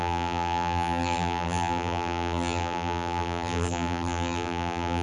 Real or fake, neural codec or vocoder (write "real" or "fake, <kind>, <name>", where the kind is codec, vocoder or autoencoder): fake, vocoder, BigVGAN v2